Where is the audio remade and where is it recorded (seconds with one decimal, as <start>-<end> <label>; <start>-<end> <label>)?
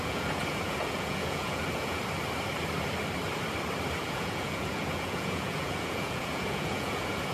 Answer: 0.0-2.0 remade; 2.0-4.0 recorded; 4.0-7.3 remade